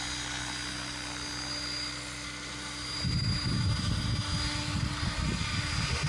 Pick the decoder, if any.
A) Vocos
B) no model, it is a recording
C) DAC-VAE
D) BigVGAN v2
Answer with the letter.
B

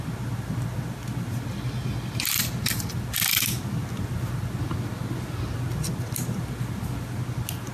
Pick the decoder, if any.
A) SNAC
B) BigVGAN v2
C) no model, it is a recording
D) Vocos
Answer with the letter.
C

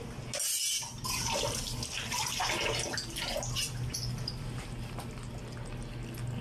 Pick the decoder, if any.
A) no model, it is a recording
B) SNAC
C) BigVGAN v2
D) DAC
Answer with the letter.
A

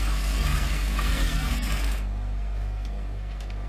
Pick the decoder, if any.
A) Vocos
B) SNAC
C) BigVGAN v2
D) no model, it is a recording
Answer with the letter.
B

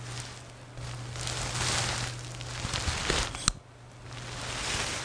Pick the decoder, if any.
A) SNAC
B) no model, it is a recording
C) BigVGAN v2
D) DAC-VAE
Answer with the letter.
B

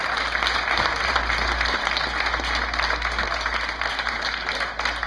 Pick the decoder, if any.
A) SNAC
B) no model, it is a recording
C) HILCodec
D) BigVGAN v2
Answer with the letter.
B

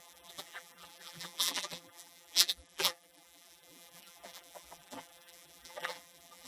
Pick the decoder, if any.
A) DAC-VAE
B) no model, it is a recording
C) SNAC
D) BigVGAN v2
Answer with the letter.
D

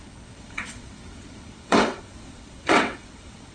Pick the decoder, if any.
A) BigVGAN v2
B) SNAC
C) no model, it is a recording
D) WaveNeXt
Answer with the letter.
D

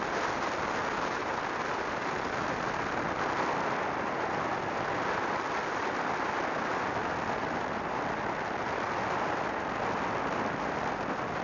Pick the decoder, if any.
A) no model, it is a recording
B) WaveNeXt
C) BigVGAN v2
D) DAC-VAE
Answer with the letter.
A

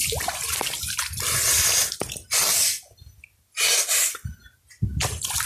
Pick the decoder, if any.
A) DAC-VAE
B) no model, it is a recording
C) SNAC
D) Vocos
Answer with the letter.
B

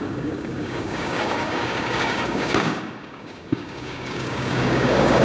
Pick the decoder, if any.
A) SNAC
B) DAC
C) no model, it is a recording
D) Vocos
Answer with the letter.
B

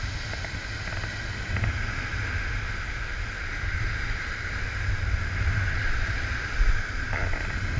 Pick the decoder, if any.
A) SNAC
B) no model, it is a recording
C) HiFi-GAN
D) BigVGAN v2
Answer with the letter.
B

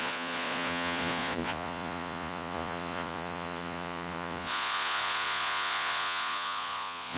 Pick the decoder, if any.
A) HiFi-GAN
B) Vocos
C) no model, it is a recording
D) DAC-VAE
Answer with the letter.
B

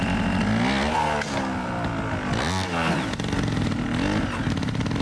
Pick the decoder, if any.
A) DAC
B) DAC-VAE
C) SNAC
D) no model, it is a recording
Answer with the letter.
D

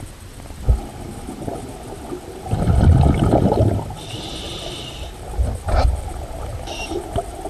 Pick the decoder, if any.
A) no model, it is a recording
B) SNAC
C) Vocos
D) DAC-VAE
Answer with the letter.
A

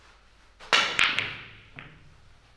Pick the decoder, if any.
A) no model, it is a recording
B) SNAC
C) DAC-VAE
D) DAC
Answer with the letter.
A